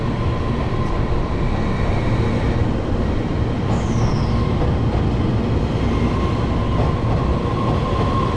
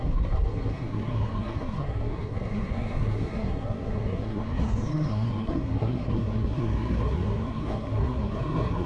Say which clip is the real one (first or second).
first